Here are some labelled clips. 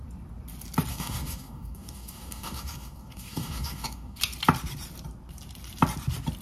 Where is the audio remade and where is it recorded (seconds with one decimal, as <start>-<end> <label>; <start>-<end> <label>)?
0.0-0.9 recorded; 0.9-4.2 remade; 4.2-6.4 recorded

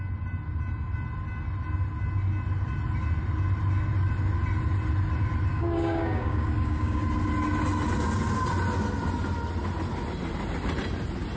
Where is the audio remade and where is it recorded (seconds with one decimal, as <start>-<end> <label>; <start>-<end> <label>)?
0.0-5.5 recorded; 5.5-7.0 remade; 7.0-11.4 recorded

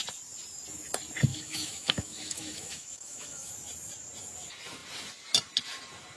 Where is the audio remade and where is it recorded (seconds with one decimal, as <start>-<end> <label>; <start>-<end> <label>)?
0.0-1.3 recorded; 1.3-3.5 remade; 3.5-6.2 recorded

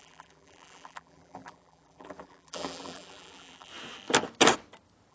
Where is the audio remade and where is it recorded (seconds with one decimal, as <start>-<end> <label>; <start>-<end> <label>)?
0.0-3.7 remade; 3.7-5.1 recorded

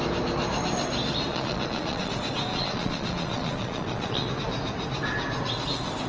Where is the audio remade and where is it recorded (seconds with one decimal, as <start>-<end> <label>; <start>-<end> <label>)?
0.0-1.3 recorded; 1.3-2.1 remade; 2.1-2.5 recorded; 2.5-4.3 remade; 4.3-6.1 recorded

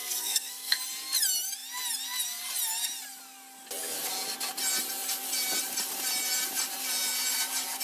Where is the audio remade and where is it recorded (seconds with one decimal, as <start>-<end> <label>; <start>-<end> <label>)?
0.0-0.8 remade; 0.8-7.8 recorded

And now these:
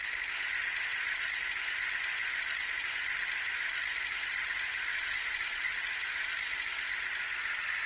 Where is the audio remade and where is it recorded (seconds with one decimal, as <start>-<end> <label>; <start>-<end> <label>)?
0.0-4.9 recorded; 4.9-5.7 remade; 5.7-7.9 recorded

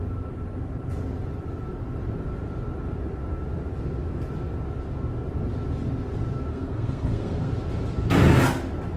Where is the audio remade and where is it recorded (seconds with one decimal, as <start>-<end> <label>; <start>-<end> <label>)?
0.0-6.5 recorded; 6.5-7.5 remade; 7.5-9.0 recorded